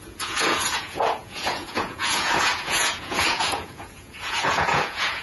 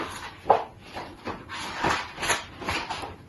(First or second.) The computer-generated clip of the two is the first